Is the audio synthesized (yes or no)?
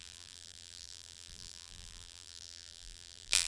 yes